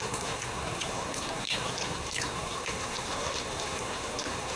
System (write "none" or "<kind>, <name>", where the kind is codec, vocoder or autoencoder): codec, SNAC